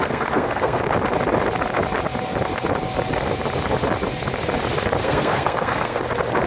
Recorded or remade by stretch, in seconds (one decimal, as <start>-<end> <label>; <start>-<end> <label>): 0.0-0.8 remade; 0.8-5.0 recorded; 5.0-6.0 remade; 6.0-6.5 recorded